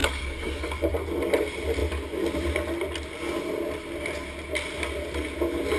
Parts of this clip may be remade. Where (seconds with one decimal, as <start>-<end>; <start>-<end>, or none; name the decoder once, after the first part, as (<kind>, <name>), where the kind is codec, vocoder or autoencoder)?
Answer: 0.0-0.9 (codec, DAC)